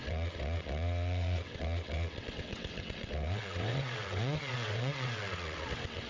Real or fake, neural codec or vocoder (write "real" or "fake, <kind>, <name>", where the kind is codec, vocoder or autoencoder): fake, vocoder, WaveNeXt